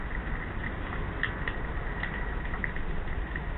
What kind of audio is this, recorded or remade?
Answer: recorded